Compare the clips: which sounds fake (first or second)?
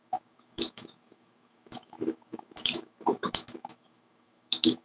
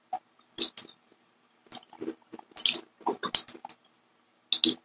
first